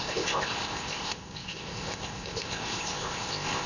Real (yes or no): no